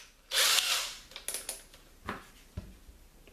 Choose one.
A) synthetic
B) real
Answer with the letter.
B